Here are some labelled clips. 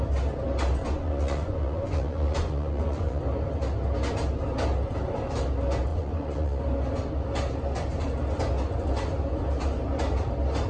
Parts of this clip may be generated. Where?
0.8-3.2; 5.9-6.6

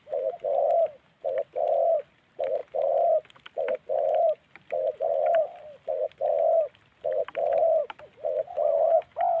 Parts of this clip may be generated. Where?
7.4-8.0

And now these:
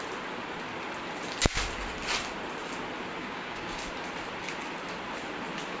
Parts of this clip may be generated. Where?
3.2-3.8

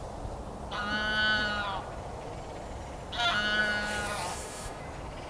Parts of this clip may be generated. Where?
4.3-4.8

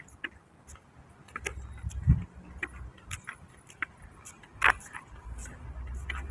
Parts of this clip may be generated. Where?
none